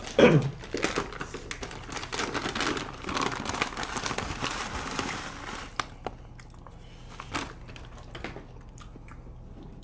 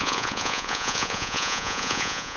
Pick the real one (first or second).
first